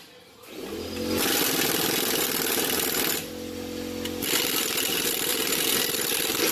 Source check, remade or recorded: recorded